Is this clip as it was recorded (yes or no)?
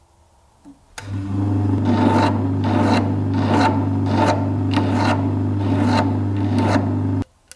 yes